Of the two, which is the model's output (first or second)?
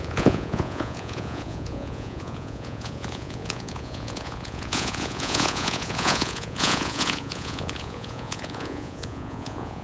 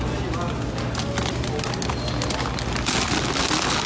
first